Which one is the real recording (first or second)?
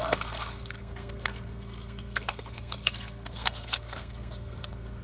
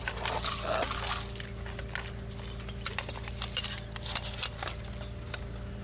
second